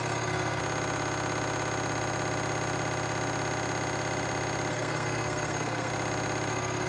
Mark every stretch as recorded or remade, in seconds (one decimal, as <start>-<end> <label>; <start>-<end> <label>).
0.0-0.6 remade; 0.6-4.7 recorded; 4.7-5.9 remade; 5.9-6.5 recorded; 6.5-6.9 remade